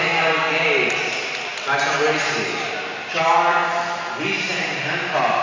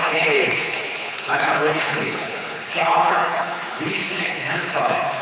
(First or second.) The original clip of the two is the first